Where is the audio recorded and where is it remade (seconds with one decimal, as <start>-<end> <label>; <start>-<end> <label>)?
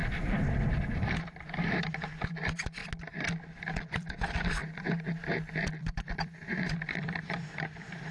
0.0-2.8 remade; 2.8-3.6 recorded; 3.6-4.6 remade; 4.6-5.8 recorded; 5.8-8.1 remade